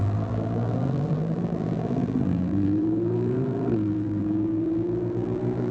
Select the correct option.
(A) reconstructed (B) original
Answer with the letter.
A